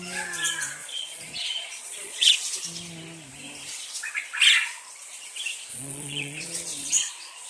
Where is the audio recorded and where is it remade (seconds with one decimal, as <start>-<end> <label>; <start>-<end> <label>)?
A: 0.0-0.8 recorded; 0.8-2.3 remade; 2.3-5.7 recorded; 5.7-7.1 remade; 7.1-7.5 recorded